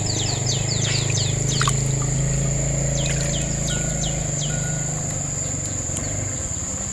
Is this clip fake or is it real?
real